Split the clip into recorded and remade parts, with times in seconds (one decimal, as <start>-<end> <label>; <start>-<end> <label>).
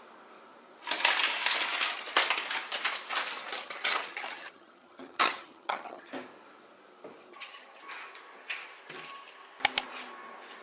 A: 0.0-3.5 recorded; 3.5-6.1 remade; 6.1-7.3 recorded; 7.3-7.8 remade; 7.8-10.6 recorded